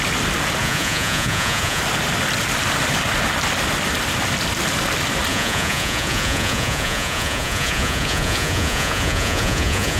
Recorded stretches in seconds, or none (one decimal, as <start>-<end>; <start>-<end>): 0.0-0.6; 1.8-5.3